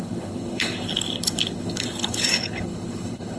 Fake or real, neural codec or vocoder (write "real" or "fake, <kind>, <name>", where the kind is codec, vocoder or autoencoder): fake, codec, HILCodec